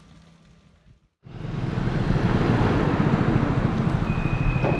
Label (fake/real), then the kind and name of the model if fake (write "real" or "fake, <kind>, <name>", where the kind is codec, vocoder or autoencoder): real